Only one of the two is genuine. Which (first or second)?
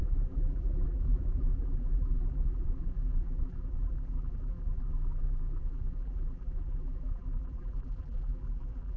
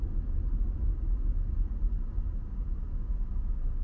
second